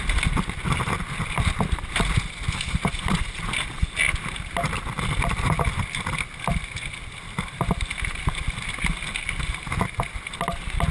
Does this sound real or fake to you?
real